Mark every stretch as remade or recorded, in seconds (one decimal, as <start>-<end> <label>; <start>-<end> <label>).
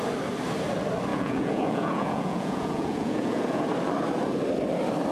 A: 0.0-1.1 recorded; 1.1-3.6 remade; 3.6-5.1 recorded